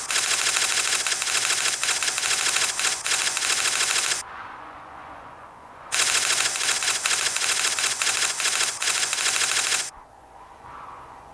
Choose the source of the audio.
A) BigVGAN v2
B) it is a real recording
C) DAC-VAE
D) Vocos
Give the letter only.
D